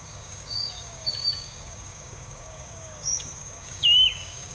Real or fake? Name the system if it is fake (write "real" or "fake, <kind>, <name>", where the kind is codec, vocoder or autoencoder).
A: fake, codec, DAC